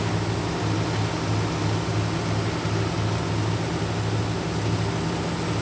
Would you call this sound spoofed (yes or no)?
no